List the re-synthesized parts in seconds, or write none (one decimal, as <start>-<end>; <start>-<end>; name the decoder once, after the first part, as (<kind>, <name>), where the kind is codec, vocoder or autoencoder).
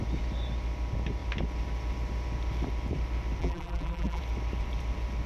3.4-4.2 (vocoder, BigVGAN v2)